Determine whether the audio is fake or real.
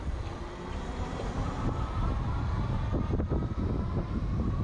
real